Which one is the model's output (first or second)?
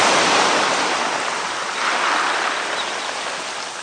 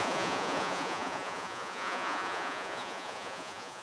second